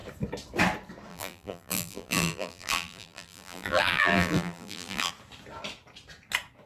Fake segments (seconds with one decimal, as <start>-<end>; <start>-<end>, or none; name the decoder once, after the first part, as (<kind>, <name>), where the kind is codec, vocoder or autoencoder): 1.1-5.1 (vocoder, BigVGAN v2)